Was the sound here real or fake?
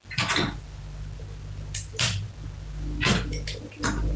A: real